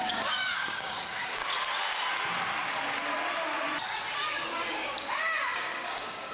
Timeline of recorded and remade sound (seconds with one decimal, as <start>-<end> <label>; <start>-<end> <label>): 0.0-1.4 remade; 1.4-4.1 recorded; 4.1-6.3 remade

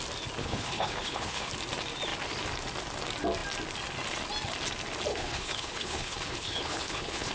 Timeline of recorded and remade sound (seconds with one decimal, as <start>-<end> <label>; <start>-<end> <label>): 0.0-0.4 recorded; 0.4-1.5 remade; 1.5-5.1 recorded; 5.1-7.3 remade

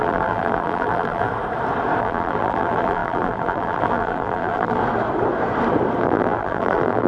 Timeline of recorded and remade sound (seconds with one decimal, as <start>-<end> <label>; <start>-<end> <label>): 0.0-1.3 remade; 1.3-2.0 recorded; 2.0-4.8 remade; 4.8-6.0 recorded; 6.0-7.1 remade